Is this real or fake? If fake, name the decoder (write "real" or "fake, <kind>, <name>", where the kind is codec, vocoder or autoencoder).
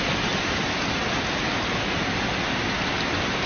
real